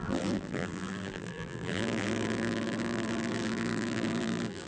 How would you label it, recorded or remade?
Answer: remade